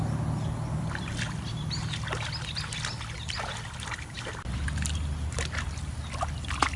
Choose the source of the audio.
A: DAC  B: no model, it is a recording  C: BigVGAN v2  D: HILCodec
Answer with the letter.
B